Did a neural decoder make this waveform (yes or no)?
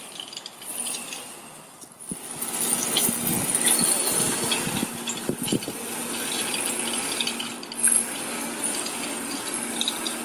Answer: no